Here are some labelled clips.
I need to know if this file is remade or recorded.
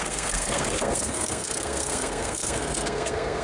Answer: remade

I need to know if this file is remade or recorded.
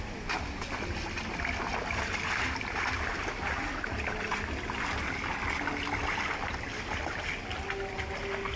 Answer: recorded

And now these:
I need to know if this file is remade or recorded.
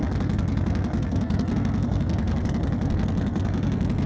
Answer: remade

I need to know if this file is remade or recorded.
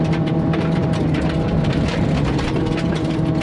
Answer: remade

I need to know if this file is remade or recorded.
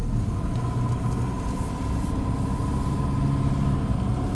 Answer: recorded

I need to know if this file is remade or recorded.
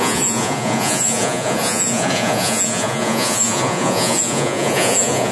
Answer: remade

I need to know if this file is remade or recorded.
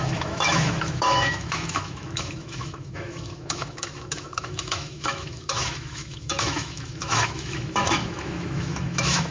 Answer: remade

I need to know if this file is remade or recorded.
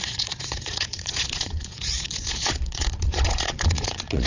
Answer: remade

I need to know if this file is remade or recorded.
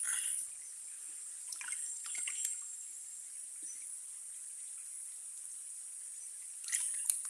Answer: recorded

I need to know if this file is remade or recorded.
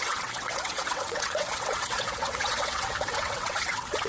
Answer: remade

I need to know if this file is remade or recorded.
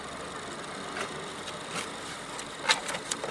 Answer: recorded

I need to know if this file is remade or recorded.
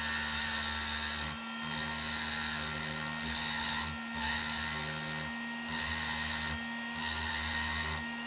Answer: recorded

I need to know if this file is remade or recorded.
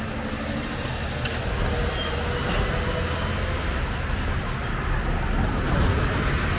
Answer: recorded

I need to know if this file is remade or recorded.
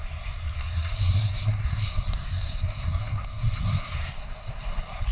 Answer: remade